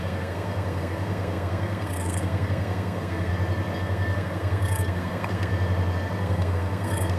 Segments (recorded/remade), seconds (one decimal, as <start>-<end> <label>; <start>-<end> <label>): 0.0-3.3 remade; 3.3-3.8 recorded; 3.8-5.5 remade; 5.5-6.2 recorded; 6.2-7.2 remade